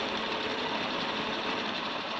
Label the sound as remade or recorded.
remade